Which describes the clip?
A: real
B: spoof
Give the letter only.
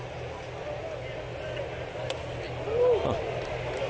A